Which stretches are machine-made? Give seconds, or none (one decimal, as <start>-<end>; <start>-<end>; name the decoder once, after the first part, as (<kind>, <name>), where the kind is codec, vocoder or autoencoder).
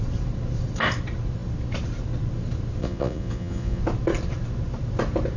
2.8-3.8 (vocoder, Vocos)